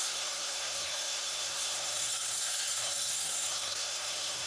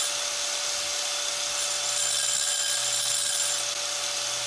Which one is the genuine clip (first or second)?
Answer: second